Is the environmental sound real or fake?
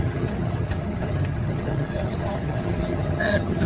fake